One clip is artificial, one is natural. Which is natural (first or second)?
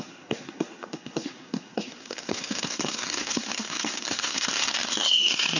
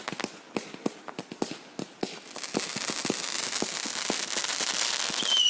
second